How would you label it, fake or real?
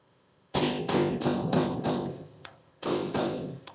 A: fake